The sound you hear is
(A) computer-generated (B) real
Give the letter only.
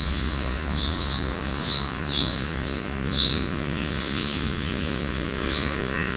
A